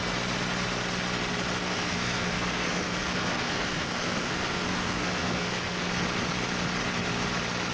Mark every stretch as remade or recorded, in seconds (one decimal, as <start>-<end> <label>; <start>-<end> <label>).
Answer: 0.0-1.6 recorded; 1.6-5.9 remade; 5.9-7.7 recorded